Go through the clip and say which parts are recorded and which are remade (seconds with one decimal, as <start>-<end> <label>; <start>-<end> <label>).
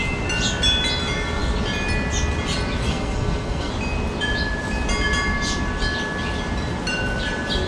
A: 0.0-2.8 recorded; 2.8-3.7 remade; 3.7-7.7 recorded